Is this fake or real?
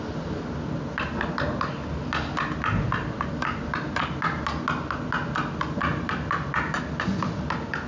real